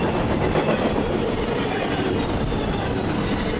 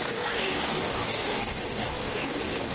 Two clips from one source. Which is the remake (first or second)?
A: second